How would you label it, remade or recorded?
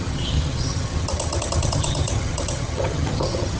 remade